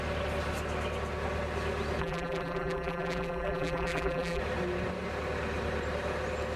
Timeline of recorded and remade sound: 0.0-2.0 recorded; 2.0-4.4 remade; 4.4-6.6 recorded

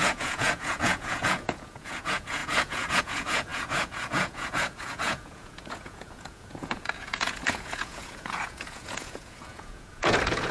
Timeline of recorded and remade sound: 0.0-10.5 remade

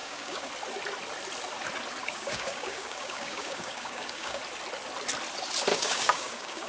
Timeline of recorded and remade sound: 0.0-0.5 remade; 0.5-2.0 recorded; 2.0-4.4 remade; 4.4-5.7 recorded; 5.7-6.7 remade

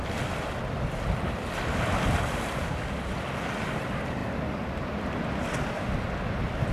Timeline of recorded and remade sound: 0.0-2.6 recorded; 2.6-3.1 remade; 3.1-6.7 recorded

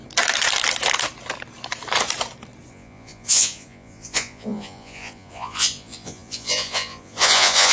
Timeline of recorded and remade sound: 0.0-2.7 recorded; 2.7-7.7 remade